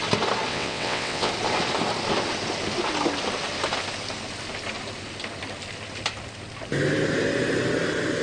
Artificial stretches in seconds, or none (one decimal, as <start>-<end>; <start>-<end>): 0.5-1.3